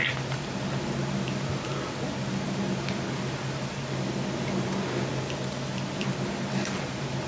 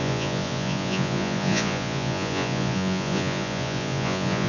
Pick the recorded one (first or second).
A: first